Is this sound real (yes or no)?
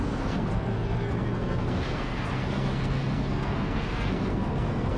no